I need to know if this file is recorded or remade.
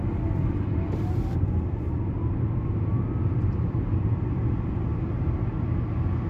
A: recorded